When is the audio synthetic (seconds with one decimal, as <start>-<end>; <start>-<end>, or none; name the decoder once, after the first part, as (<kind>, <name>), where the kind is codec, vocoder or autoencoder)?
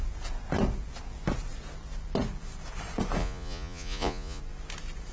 3.2-4.4 (vocoder, Vocos)